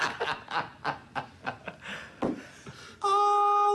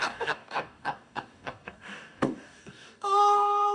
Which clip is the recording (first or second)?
first